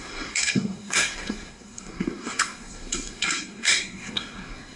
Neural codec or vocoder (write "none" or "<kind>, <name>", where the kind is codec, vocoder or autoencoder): codec, SNAC